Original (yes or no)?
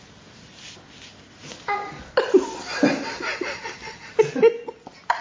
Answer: yes